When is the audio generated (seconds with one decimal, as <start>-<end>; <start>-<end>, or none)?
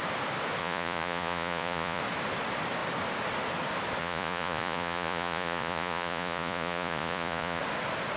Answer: 0.6-2.0; 4.0-7.6